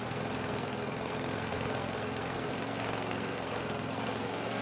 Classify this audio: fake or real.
fake